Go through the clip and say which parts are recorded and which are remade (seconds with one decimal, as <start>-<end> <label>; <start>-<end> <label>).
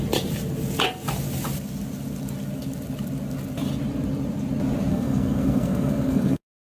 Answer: 0.0-4.9 recorded; 4.9-6.6 remade